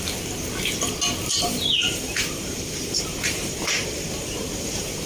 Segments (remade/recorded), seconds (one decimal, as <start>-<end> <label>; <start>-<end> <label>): 0.0-1.8 recorded; 1.8-5.1 remade